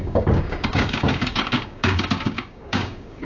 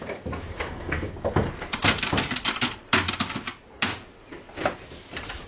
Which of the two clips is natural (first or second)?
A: second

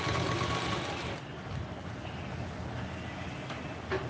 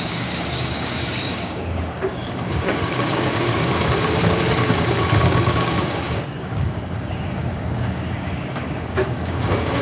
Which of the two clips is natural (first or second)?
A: first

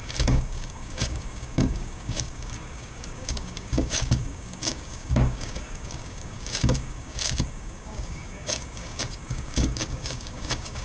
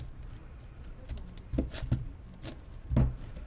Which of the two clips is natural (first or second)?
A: second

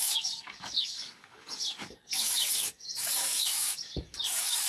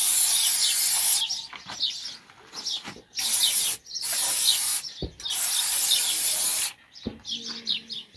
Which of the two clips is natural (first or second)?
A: second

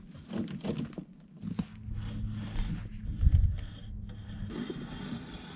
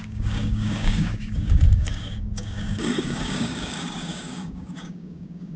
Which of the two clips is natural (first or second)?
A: first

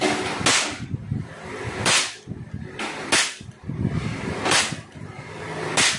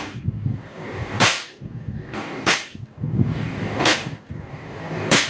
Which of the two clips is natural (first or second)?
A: first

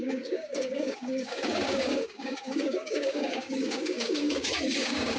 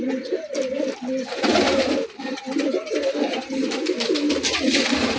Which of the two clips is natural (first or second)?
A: second